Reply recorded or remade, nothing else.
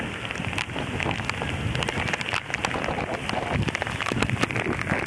recorded